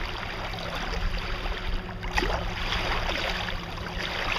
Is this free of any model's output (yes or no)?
yes